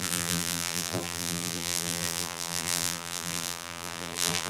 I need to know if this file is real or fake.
fake